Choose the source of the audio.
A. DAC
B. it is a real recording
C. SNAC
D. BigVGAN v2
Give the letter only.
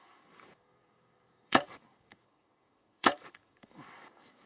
A